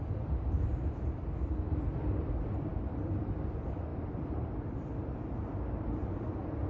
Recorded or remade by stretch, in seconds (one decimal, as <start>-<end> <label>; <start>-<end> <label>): 0.0-6.7 remade